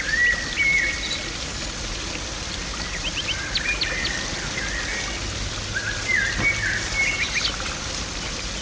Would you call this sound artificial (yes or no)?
no